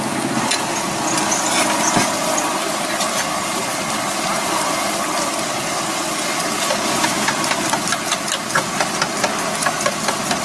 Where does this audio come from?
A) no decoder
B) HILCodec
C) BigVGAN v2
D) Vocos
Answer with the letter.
A